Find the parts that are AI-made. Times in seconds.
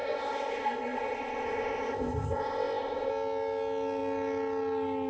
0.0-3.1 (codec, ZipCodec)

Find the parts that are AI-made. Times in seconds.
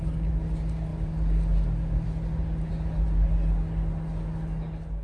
none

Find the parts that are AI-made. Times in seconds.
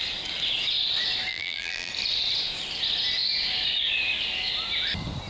1.3-1.9 (vocoder, BigVGAN v2)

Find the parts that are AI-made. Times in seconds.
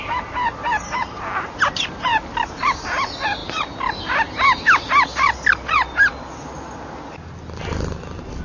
none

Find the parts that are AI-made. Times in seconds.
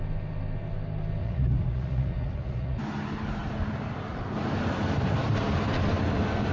1.2-2.8 (vocoder, Vocos)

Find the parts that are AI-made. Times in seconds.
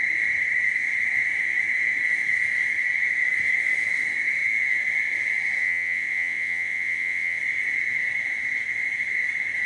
5.6-7.4 (vocoder, WaveNeXt)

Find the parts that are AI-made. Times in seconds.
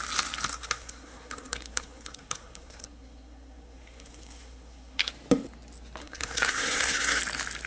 0.5-5.1 (codec, SNAC); 6.0-7.2